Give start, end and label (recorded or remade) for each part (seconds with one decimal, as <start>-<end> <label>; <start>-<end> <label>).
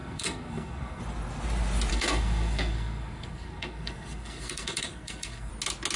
0.0-1.0 remade; 1.0-1.9 recorded; 1.9-5.5 remade; 5.5-6.0 recorded